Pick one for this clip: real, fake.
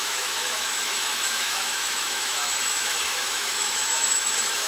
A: fake